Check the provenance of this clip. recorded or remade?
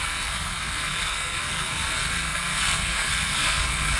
remade